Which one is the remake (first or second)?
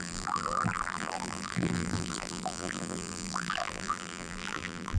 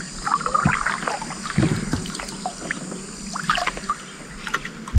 first